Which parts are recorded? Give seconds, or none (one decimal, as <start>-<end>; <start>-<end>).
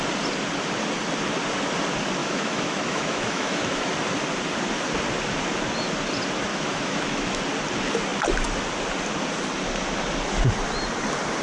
0.0-2.2; 3.8-6.5; 7.4-11.4